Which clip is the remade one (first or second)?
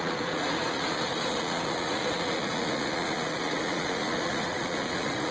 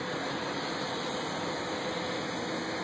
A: first